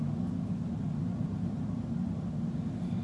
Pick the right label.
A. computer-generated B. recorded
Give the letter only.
B